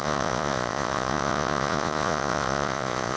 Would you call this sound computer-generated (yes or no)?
yes